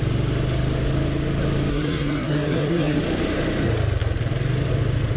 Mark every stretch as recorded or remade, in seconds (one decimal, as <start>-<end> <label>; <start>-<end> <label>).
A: 0.0-1.7 recorded; 1.7-3.0 remade; 3.0-5.2 recorded